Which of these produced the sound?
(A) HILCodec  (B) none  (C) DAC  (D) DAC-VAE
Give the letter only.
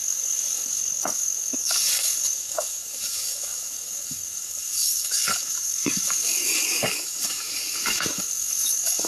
C